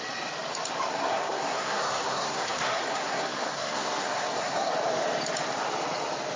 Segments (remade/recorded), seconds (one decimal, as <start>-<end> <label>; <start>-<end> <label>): 0.0-0.9 recorded; 0.9-4.7 remade; 4.7-6.4 recorded